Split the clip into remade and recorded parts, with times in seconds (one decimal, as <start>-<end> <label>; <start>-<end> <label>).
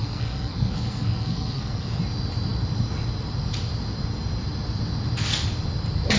0.0-2.0 remade; 2.0-6.2 recorded